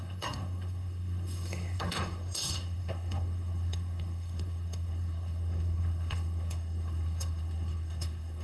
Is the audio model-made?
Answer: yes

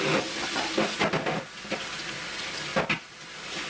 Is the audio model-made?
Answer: no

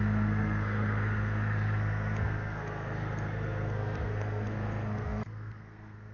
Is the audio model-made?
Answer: yes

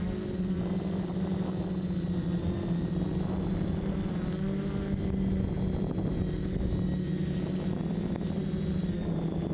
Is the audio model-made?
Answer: no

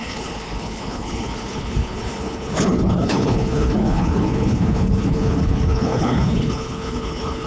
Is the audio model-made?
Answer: yes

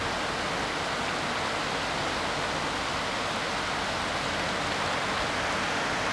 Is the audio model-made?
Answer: no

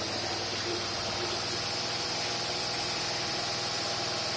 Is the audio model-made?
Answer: yes